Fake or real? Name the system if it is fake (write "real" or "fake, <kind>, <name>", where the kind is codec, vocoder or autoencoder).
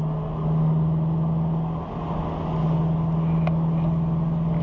real